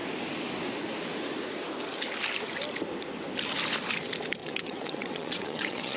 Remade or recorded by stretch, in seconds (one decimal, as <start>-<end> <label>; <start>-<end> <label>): 0.0-4.4 recorded; 4.4-6.0 remade